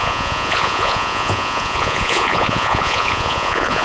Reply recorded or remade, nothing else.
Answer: remade